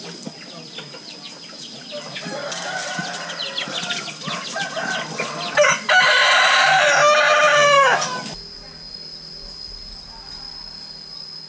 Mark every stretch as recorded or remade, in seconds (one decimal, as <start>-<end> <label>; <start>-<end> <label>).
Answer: 0.0-11.5 recorded